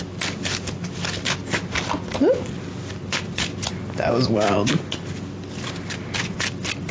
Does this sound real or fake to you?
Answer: real